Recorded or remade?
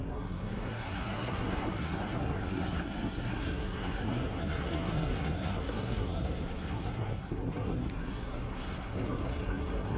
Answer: remade